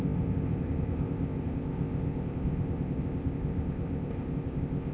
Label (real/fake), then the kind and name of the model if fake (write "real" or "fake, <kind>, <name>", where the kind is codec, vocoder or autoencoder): fake, codec, ZipCodec